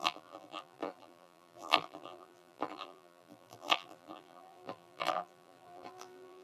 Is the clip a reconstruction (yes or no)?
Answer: yes